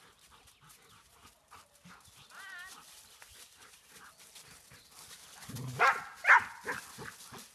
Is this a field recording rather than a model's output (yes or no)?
yes